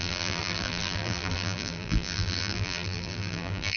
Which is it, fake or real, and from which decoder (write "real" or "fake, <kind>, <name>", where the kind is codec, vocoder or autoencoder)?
fake, vocoder, BigVGAN v2